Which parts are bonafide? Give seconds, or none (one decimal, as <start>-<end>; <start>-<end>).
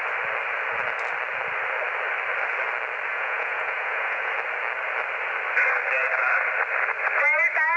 0.0-3.1; 4.3-7.8